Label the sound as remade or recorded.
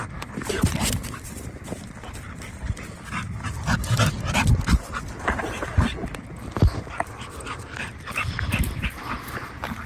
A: remade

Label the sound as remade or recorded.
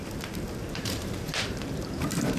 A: remade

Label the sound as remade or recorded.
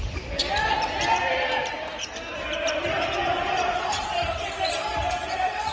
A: recorded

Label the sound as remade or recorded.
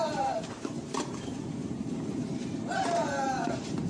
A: remade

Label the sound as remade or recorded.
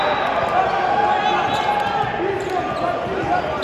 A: recorded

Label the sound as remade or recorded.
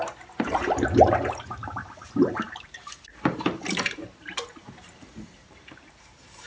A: remade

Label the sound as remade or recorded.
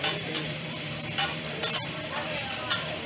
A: remade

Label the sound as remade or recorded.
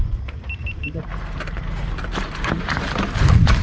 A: remade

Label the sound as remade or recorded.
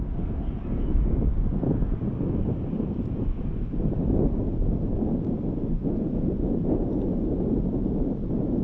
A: recorded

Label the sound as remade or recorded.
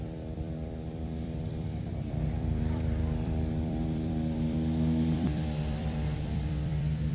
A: remade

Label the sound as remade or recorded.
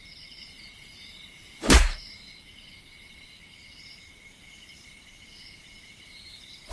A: remade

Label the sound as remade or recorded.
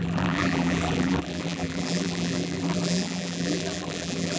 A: remade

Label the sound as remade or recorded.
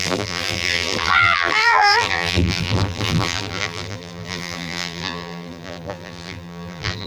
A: remade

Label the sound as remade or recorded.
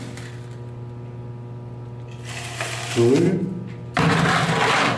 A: remade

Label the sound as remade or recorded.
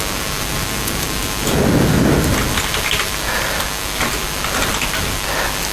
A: recorded